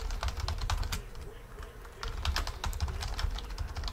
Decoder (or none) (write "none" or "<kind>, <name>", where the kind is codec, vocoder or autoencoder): none